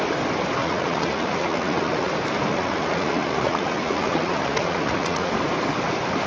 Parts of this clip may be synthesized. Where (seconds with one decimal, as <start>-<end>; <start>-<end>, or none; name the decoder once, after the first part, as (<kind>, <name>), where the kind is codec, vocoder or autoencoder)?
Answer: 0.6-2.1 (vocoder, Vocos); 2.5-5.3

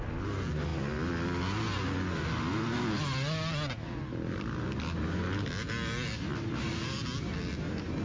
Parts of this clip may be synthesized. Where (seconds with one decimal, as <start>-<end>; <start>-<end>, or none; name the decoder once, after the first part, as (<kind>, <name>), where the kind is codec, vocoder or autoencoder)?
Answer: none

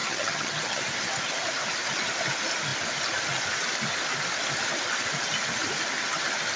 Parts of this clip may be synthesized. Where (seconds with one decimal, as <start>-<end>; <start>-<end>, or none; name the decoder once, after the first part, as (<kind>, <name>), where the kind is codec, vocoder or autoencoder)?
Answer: 0.0-0.8 (vocoder, HiFi-GAN)

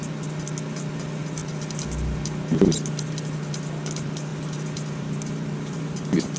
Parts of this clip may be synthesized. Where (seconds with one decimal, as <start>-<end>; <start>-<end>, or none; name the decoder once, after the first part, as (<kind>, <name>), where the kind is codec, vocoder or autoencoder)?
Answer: none